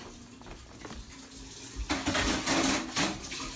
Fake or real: real